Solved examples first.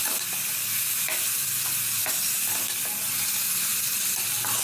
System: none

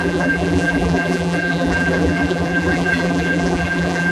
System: vocoder, BigVGAN v2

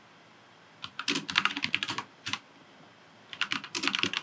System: none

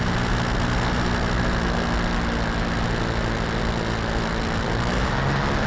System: none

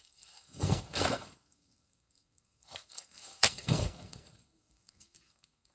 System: codec, SNAC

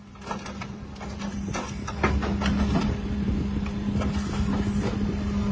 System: none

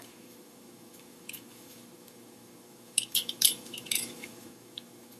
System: autoencoder, DAC-VAE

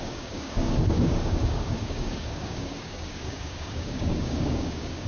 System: codec, DAC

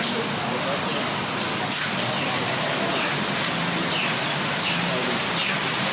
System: none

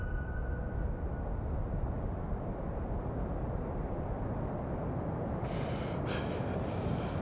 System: none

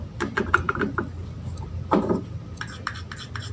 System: none